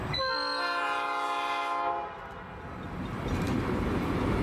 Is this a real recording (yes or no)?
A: yes